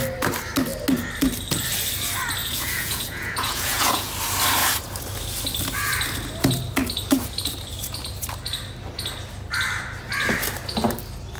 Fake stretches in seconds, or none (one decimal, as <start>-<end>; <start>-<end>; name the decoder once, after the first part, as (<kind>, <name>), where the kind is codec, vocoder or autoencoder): 2.4-4.1 (vocoder, Vocos)